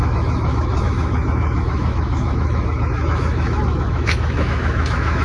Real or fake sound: fake